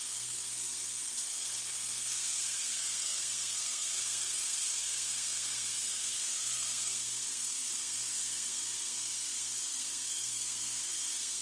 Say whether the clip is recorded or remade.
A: remade